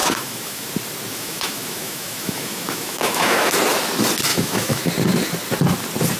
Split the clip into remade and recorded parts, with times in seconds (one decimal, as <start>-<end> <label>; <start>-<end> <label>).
0.0-0.7 remade; 0.7-1.1 recorded; 1.1-3.5 remade; 3.5-4.3 recorded; 4.3-4.9 remade; 4.9-6.2 recorded